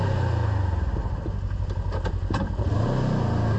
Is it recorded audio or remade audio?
recorded